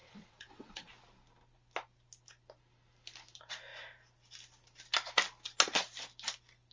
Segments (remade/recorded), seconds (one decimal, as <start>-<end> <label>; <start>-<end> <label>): 0.0-0.9 remade; 0.9-6.7 recorded